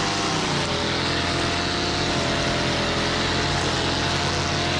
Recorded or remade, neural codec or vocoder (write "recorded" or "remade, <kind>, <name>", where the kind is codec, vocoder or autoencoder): recorded